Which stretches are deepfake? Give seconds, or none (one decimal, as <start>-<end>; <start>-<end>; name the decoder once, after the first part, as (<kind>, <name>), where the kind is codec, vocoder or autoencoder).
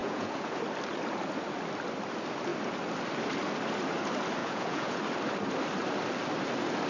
0.0-0.6 (vocoder, Vocos); 4.4-5.0